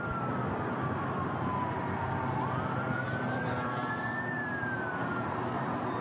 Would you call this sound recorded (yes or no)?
yes